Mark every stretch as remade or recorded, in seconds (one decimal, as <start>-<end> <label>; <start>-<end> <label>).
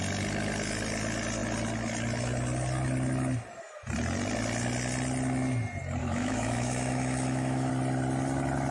0.0-6.0 recorded; 6.0-7.7 remade; 7.7-8.7 recorded